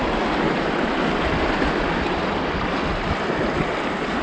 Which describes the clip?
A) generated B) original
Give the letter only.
B